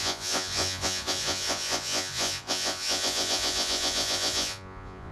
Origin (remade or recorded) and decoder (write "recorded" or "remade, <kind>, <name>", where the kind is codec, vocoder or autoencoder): remade, vocoder, Vocos